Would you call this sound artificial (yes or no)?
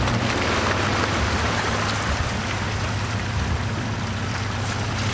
no